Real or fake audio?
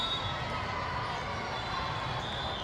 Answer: real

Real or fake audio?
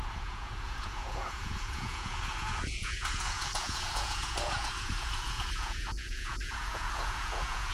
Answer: fake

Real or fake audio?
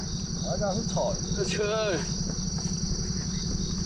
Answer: real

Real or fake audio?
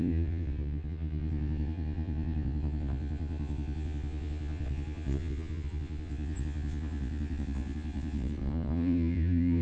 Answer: fake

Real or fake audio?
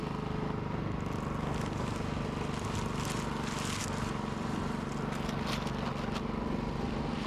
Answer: real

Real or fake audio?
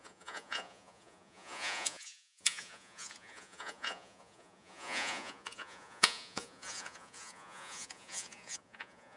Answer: fake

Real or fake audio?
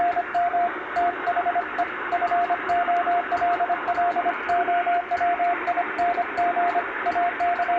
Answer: real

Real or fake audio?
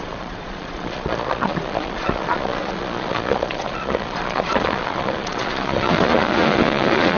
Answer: fake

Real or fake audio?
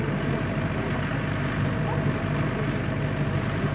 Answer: real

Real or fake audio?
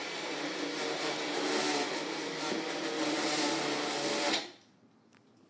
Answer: real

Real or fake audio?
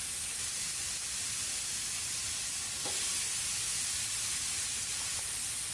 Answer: real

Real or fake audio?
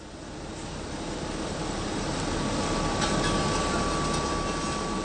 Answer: real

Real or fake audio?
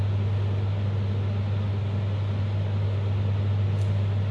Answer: real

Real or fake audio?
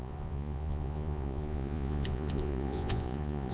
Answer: fake